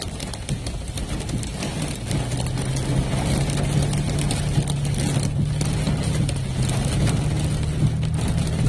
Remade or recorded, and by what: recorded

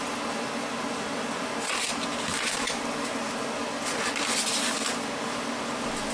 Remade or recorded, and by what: recorded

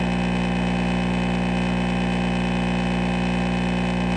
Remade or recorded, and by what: recorded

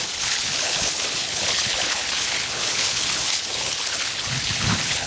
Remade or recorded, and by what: remade, codec, HILCodec